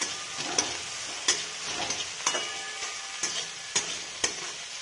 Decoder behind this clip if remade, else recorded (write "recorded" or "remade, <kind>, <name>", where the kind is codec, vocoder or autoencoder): recorded